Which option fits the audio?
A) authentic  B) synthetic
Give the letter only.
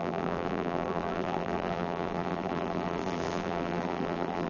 B